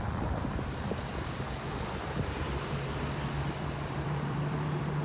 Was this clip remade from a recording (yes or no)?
yes